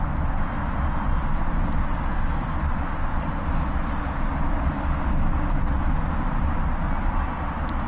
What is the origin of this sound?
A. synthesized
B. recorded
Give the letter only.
B